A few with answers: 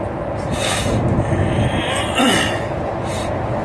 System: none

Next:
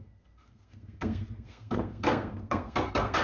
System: codec, SNAC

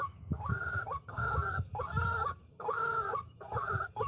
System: codec, DAC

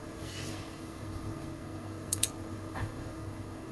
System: codec, SNAC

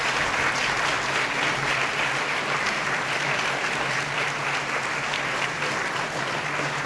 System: none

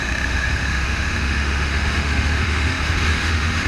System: autoencoder, DAC-VAE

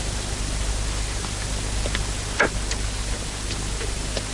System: none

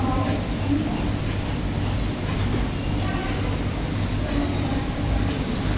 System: none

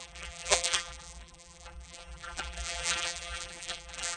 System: vocoder, BigVGAN v2